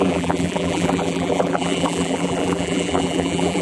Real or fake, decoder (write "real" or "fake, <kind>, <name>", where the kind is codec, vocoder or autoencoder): fake, vocoder, BigVGAN v2